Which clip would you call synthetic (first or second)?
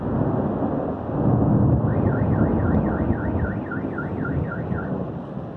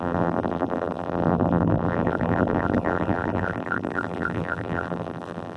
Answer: second